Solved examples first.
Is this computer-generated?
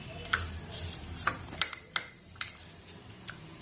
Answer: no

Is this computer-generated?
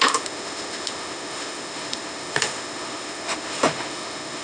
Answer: yes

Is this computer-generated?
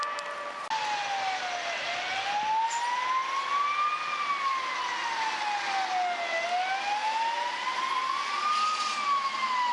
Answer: no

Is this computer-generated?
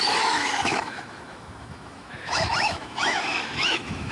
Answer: yes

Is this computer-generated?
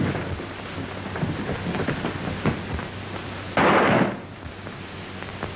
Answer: no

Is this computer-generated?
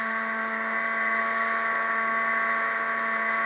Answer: no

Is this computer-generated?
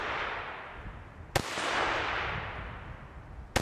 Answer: no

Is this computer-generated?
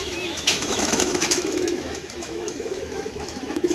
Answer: yes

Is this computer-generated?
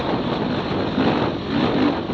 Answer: no